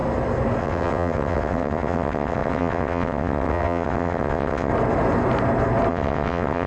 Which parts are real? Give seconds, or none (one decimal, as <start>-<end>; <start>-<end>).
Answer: 0.0-0.6; 4.7-5.9